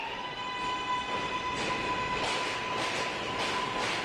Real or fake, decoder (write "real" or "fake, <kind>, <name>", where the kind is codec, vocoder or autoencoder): real